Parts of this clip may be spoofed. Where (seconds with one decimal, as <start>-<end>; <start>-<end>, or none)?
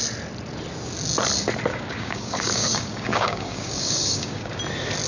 1.7-4.6